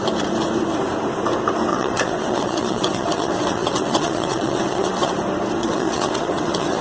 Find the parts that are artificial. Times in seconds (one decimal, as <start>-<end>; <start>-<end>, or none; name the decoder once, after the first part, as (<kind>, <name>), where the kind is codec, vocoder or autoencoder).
1.7-5.1 (vocoder, WaveNeXt); 5.6-6.8